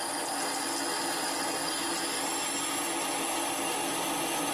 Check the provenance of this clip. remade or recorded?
recorded